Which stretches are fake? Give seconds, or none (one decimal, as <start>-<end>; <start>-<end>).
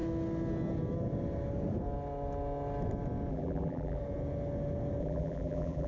3.3-4.0; 5.0-5.9